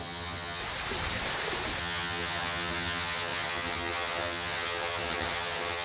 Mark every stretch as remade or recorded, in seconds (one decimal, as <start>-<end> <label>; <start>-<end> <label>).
0.0-0.6 remade; 0.6-1.8 recorded; 1.8-5.8 remade